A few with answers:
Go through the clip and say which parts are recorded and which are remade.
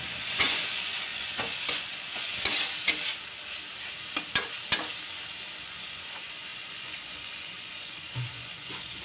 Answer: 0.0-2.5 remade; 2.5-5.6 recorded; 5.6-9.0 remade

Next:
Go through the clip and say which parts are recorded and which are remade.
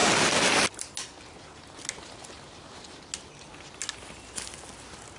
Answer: 0.0-5.2 recorded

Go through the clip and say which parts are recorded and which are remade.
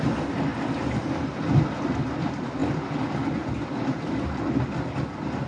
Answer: 0.0-5.5 recorded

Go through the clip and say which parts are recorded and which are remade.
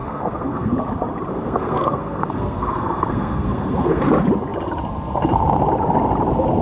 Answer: 0.0-0.7 remade; 0.7-1.3 recorded; 1.3-4.0 remade; 4.0-6.6 recorded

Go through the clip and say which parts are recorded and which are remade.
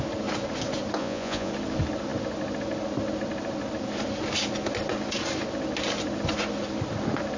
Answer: 0.0-1.0 recorded; 1.0-1.5 remade; 1.5-7.4 recorded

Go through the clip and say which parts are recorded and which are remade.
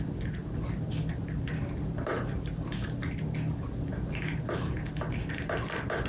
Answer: 0.0-6.1 recorded